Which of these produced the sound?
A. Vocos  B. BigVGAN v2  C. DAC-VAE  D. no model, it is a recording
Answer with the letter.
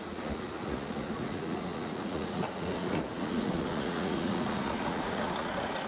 A